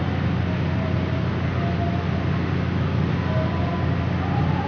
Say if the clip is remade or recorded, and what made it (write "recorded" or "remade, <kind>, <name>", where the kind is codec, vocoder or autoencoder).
recorded